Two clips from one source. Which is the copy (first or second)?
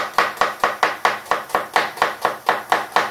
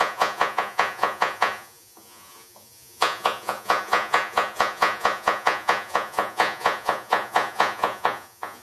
second